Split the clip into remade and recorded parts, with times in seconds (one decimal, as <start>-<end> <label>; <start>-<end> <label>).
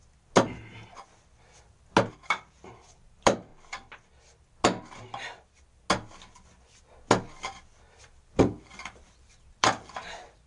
0.0-2.1 recorded; 2.1-3.5 remade; 3.5-8.0 recorded; 8.0-10.5 remade